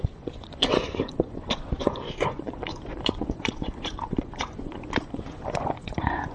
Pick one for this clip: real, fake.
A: fake